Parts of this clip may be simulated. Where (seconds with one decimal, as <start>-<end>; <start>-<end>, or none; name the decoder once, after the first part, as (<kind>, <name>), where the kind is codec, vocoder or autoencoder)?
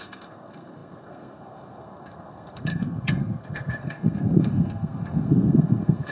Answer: 0.0-6.1 (codec, SNAC)